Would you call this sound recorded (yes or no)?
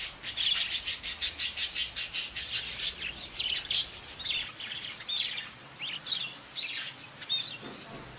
yes